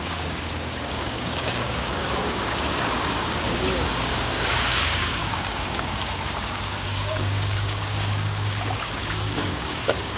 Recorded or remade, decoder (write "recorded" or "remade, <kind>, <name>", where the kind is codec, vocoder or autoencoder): remade, codec, DAC